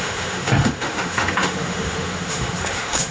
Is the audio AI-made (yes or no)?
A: yes